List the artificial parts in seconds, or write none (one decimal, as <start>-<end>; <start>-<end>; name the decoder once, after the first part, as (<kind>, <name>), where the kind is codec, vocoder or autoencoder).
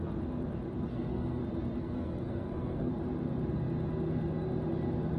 0.9-1.4 (codec, SNAC); 1.8-2.9